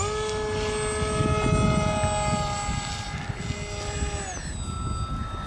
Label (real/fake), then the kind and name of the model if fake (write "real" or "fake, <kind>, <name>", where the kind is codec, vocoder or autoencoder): real